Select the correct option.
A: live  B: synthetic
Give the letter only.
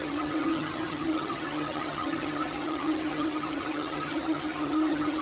B